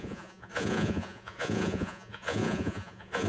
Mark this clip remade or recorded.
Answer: remade